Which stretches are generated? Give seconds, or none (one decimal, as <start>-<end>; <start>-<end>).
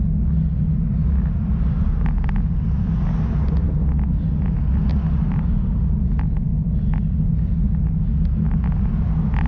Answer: none